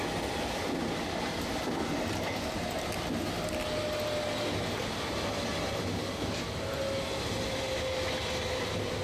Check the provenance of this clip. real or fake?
real